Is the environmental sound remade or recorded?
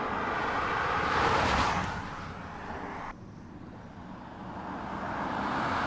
recorded